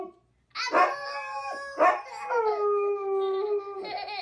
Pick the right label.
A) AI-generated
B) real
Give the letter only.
B